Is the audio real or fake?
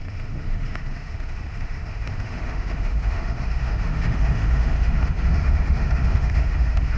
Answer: fake